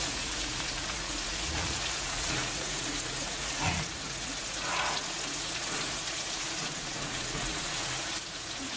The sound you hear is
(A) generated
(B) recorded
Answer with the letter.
A